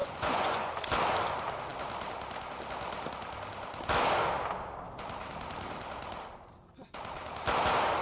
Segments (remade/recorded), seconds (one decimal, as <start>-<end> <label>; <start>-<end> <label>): 0.0-0.7 remade; 0.7-8.0 recorded